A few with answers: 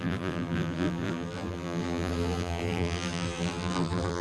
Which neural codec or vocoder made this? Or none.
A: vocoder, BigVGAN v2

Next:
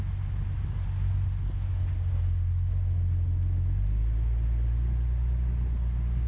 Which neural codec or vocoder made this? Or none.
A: none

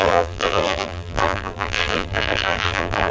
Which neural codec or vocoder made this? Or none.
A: vocoder, BigVGAN v2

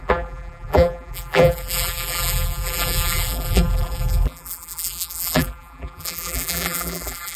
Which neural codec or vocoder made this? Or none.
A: vocoder, BigVGAN v2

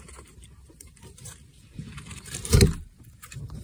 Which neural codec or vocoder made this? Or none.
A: vocoder, BigVGAN v2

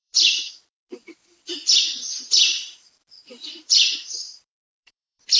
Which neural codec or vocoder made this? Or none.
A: vocoder, BigVGAN v2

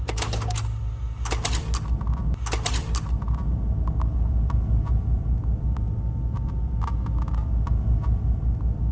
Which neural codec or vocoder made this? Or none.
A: none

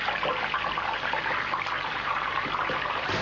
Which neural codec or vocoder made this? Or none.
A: none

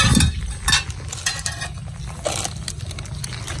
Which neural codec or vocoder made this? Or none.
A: none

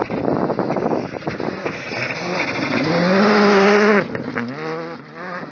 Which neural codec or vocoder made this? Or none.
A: none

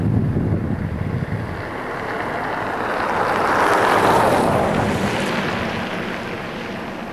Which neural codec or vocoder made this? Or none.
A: none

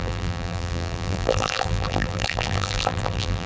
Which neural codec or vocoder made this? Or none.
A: vocoder, BigVGAN v2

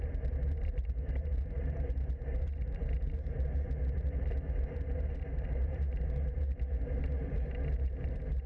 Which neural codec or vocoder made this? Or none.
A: vocoder, BigVGAN v2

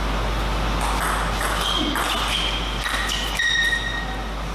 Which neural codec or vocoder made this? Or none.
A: none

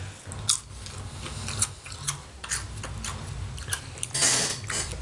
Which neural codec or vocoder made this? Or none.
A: none